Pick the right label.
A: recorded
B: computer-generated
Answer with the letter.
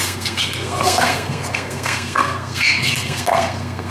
B